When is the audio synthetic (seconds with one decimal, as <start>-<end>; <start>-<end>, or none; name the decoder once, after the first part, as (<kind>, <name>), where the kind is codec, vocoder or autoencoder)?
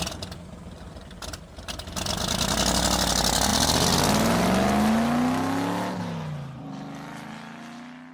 1.0-1.7 (vocoder, BigVGAN v2)